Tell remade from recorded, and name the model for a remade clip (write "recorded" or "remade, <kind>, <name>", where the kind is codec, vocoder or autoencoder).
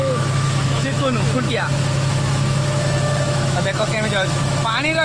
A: remade, autoencoder, DAC-VAE